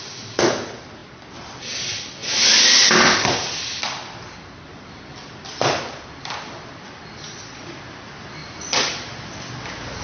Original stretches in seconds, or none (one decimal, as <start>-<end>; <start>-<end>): 0.0-2.2; 5.8-8.4; 9.5-10.0